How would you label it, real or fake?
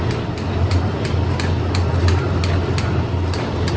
real